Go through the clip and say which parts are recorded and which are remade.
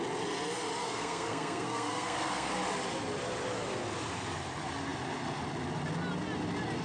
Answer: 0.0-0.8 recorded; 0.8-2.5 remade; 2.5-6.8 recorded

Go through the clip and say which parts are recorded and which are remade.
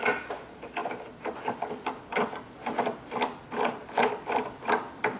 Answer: 0.0-5.2 recorded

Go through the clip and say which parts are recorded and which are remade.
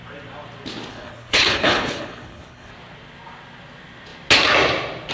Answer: 0.0-0.9 recorded; 0.9-2.7 remade; 2.7-5.1 recorded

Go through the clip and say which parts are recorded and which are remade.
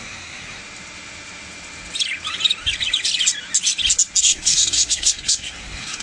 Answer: 0.0-0.6 remade; 0.6-4.2 recorded; 4.2-6.0 remade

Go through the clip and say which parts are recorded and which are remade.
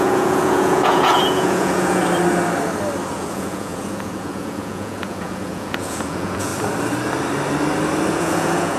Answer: 0.0-2.0 remade; 2.0-3.1 recorded; 3.1-6.5 remade; 6.5-8.1 recorded; 8.1-8.8 remade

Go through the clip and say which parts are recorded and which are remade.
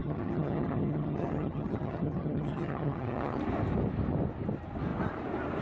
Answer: 0.0-3.4 remade; 3.4-5.6 recorded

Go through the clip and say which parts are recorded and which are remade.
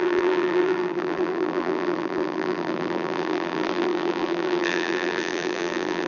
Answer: 0.0-6.1 remade